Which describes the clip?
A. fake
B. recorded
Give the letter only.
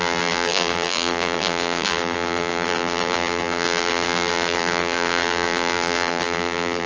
A